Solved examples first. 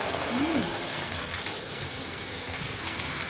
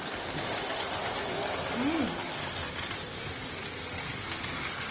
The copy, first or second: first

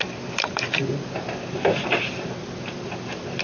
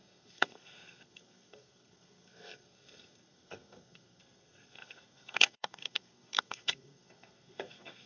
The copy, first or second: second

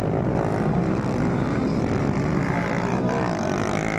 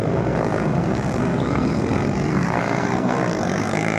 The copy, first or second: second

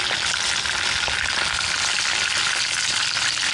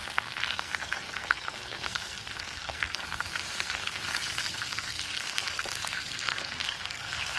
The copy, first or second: second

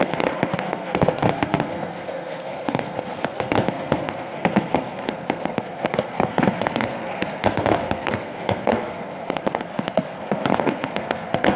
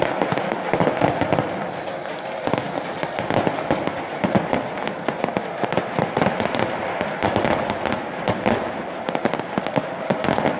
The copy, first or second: first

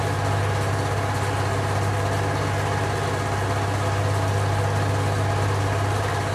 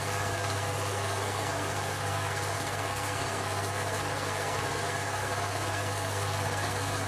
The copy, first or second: second